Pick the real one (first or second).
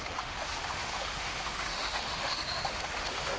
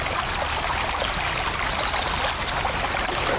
second